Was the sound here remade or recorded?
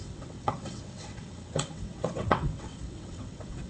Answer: remade